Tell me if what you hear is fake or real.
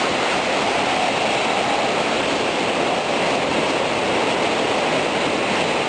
real